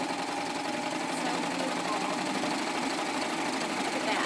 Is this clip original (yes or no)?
yes